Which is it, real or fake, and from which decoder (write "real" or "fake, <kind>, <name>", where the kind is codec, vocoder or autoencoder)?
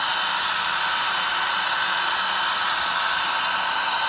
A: real